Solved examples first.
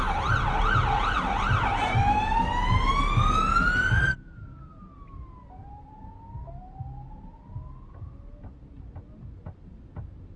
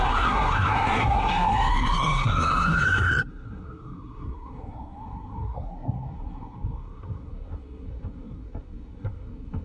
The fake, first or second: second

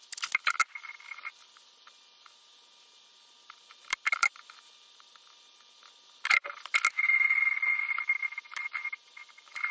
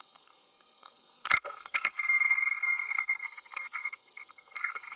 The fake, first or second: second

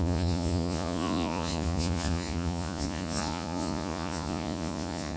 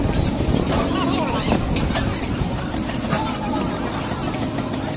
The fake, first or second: first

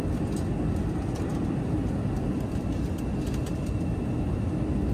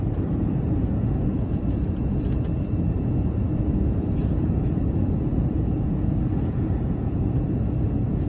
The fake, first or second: second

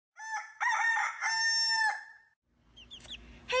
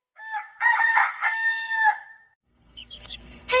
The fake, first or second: second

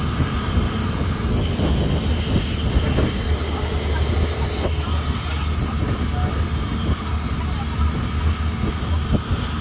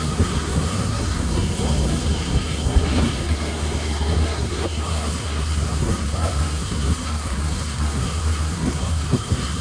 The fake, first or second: second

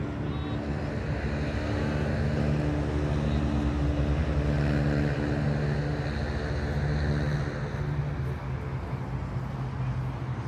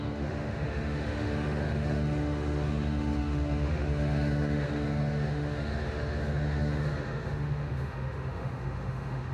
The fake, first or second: second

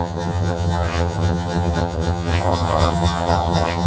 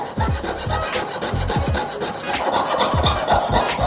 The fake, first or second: first